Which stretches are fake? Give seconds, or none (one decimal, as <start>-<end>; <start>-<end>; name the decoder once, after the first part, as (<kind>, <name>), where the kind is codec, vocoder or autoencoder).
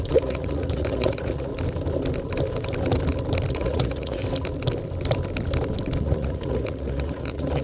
0.0-1.5 (vocoder, Vocos); 3.5-4.2; 6.0-7.6